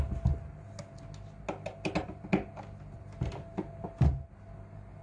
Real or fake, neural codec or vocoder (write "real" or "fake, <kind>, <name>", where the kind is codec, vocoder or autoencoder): real